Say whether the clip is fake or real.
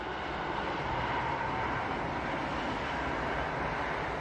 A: real